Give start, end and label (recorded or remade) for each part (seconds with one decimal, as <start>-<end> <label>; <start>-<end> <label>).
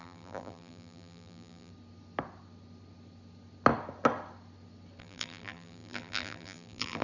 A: 0.0-1.7 remade; 1.7-5.0 recorded; 5.0-7.0 remade